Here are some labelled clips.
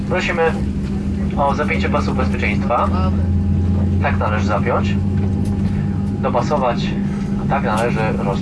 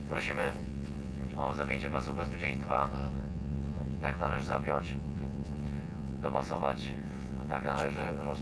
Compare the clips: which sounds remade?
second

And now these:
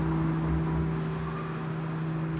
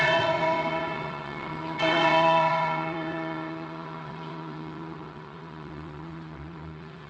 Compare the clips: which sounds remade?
second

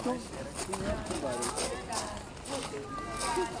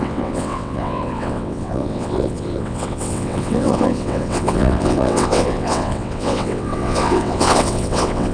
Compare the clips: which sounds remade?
second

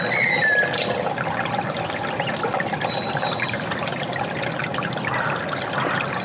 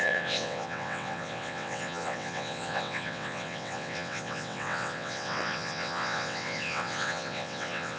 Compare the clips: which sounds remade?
second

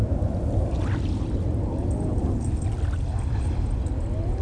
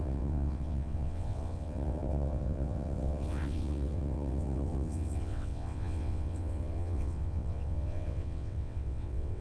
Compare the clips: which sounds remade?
second